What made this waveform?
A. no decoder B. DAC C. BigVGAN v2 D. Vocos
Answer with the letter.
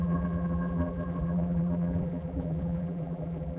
C